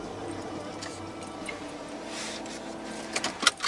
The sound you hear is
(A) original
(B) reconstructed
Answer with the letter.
A